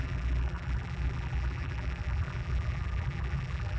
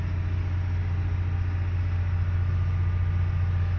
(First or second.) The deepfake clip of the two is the first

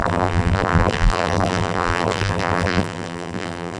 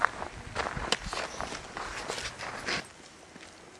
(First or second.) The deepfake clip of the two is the first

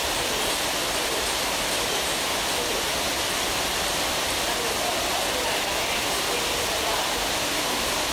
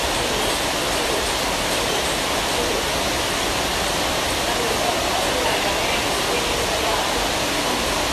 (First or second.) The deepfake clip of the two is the first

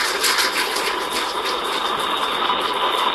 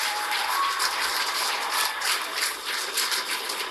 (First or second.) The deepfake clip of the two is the second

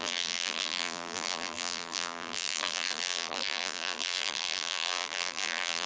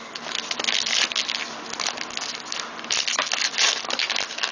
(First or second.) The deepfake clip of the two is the first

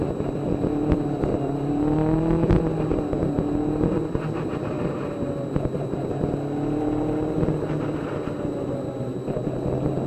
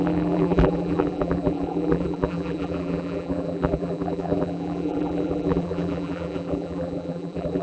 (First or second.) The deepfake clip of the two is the second